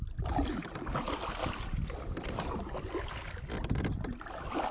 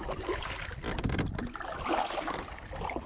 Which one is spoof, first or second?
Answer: first